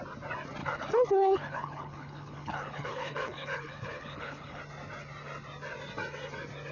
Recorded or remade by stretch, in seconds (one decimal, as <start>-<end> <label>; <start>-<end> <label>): 0.0-0.6 recorded; 0.6-4.6 remade; 4.6-6.7 recorded